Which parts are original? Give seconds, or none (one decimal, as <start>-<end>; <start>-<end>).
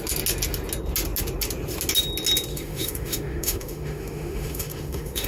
0.0-2.5